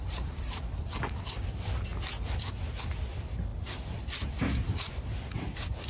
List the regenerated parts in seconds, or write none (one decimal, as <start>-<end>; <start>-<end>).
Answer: 0.0-0.8